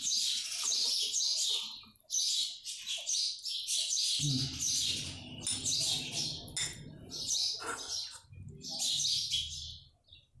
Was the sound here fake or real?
real